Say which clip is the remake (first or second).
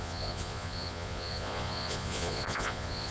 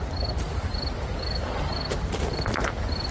first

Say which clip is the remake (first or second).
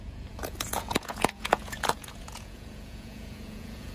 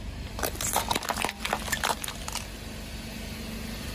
first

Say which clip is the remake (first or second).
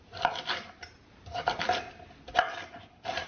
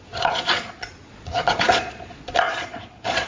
second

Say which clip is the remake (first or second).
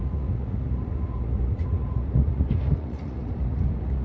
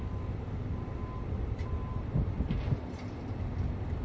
first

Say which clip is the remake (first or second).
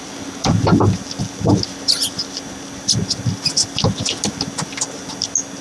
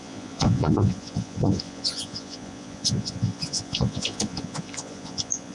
second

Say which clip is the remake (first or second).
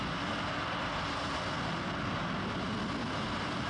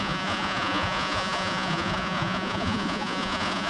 second